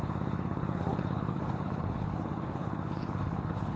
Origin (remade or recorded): remade